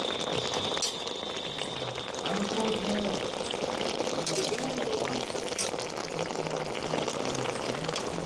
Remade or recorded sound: recorded